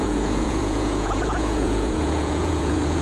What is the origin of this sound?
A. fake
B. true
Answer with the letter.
A